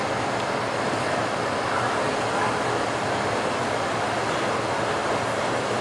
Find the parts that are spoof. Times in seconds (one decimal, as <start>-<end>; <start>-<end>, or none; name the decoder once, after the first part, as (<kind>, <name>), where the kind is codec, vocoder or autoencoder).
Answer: none